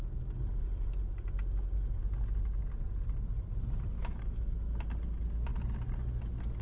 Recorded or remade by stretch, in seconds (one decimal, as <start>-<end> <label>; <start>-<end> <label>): 0.0-6.6 recorded